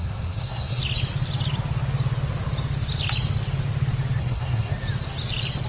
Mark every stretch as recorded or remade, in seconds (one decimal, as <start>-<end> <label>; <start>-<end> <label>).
0.0-0.8 remade; 0.8-4.2 recorded; 4.2-4.7 remade; 4.7-5.7 recorded